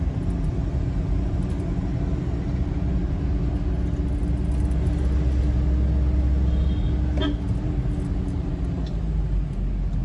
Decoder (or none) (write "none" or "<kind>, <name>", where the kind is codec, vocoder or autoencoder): none